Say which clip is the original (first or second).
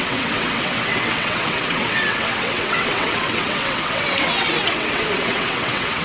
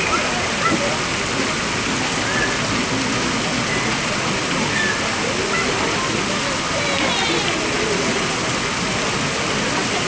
second